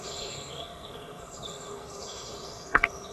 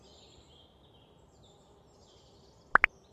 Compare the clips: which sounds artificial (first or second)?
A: first